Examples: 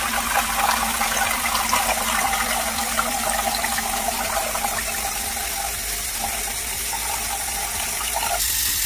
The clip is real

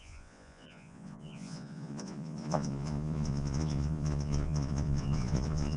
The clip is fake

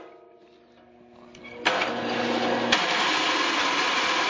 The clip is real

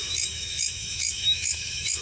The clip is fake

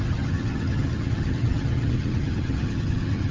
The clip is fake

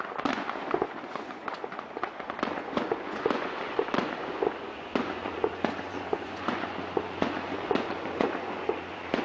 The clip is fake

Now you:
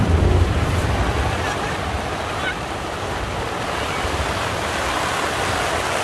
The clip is real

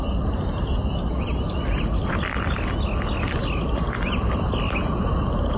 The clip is real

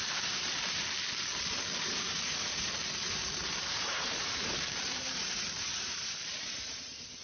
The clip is fake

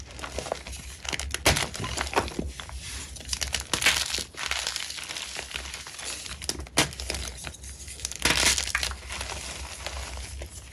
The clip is real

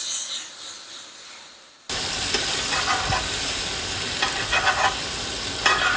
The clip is real